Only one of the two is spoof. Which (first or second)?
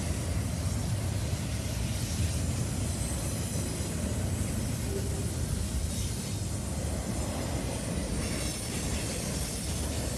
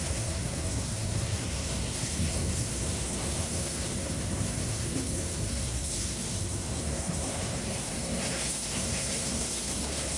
second